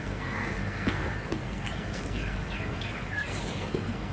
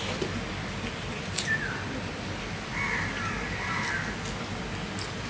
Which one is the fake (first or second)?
first